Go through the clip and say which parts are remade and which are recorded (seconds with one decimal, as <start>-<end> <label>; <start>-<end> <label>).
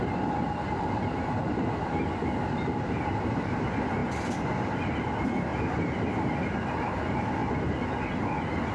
0.0-8.7 recorded